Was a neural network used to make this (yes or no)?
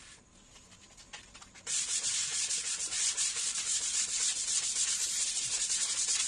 yes